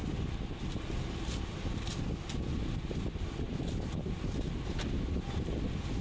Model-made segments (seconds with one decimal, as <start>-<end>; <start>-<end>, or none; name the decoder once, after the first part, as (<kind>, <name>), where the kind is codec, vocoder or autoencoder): none